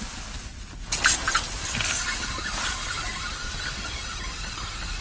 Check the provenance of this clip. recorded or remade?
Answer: recorded